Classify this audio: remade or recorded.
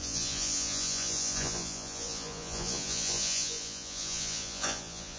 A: remade